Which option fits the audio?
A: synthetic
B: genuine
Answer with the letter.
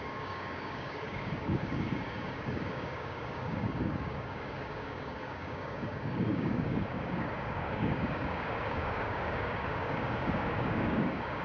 A